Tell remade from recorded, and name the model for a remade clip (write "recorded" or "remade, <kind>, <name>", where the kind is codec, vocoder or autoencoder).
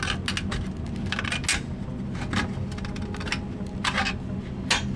recorded